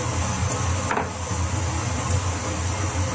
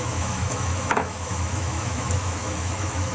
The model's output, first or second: second